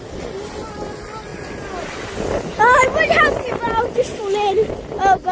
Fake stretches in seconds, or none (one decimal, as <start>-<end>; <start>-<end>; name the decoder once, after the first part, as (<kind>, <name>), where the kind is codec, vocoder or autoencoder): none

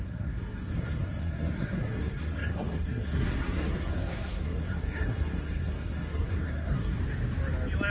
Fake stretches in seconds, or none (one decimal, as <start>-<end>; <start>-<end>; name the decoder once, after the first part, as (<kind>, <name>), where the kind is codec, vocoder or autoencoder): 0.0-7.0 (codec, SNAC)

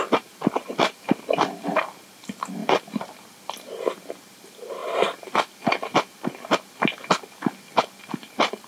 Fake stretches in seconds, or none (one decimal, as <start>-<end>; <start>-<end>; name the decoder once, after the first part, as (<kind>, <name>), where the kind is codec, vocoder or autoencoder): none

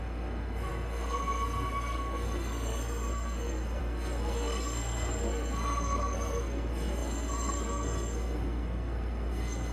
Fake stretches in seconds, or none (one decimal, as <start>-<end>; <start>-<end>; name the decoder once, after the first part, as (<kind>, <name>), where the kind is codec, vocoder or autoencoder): 0.0-9.7 (codec, SNAC)